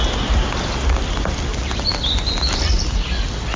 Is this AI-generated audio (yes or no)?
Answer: no